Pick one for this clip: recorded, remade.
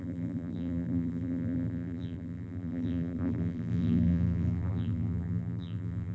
remade